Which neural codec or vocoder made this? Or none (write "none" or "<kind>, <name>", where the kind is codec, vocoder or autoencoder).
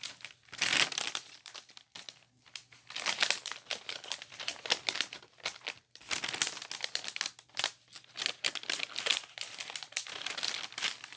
none